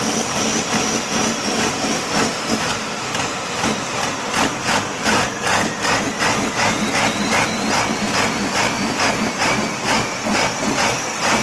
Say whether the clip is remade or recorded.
recorded